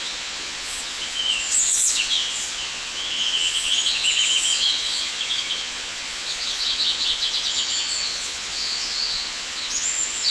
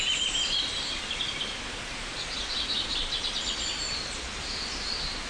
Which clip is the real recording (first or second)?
second